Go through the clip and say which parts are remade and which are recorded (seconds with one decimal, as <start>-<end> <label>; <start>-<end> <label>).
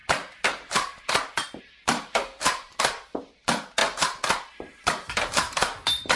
0.0-3.8 remade; 3.8-5.1 recorded; 5.1-6.2 remade